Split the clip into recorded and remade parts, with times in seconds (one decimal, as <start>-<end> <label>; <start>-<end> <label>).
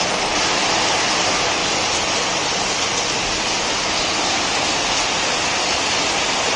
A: 0.0-6.6 recorded